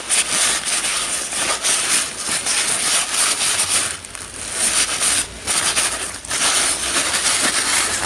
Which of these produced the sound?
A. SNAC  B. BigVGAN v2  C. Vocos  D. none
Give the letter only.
D